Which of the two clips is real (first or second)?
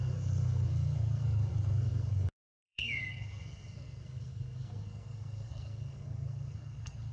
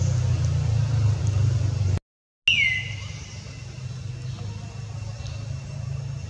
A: second